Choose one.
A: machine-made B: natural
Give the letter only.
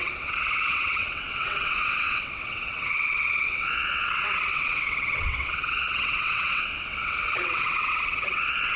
A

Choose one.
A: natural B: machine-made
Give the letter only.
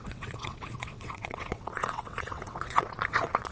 B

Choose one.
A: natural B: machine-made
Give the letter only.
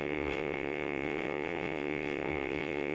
B